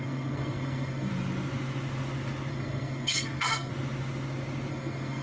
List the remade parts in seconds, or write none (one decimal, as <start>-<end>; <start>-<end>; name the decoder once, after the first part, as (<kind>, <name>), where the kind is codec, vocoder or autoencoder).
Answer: 0.0-1.1 (codec, SNAC); 2.5-3.7; 4.7-5.2